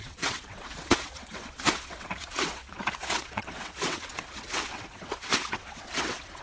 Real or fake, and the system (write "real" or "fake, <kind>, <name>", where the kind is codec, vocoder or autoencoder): fake, vocoder, WaveNeXt